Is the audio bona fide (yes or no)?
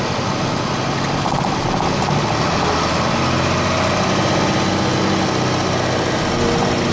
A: yes